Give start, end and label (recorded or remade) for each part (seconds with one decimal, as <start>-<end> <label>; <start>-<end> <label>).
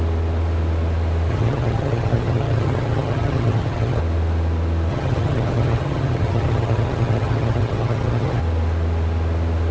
0.0-1.3 recorded; 1.3-4.0 remade; 4.0-4.9 recorded; 4.9-8.4 remade; 8.4-9.7 recorded